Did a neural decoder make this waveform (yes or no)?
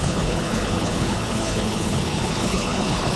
yes